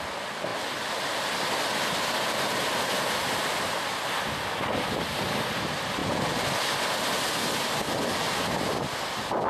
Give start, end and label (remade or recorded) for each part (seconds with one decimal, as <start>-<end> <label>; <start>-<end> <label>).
0.0-9.5 recorded

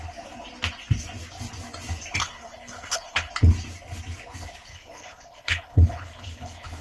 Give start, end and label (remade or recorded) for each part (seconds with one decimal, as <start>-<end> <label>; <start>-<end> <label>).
0.0-2.2 recorded; 2.2-3.3 remade; 3.3-4.7 recorded; 4.7-6.8 remade

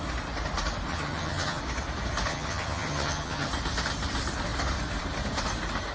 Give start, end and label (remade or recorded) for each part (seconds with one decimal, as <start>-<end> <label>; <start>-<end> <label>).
0.0-0.9 recorded; 0.9-1.6 remade; 1.6-2.3 recorded; 2.3-3.5 remade; 3.5-5.9 recorded

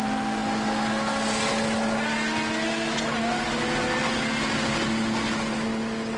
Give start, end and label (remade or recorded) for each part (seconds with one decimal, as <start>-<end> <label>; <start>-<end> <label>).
0.0-6.2 recorded

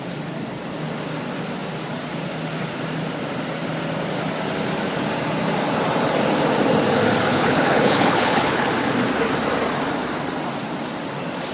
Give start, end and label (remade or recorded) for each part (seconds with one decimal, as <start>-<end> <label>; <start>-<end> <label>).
0.0-7.3 recorded; 7.3-8.7 remade; 8.7-11.5 recorded